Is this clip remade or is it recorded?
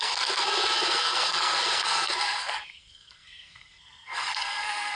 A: remade